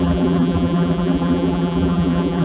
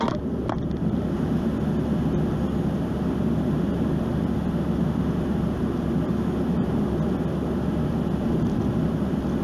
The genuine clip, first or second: second